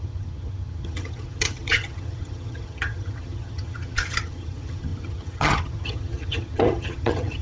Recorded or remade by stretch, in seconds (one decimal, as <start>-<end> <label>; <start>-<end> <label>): 0.0-7.4 remade